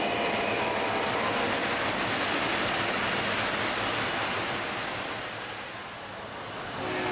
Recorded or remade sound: recorded